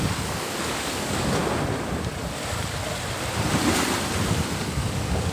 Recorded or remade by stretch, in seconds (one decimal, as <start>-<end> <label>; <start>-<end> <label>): 0.0-1.4 remade; 1.4-4.6 recorded; 4.6-5.3 remade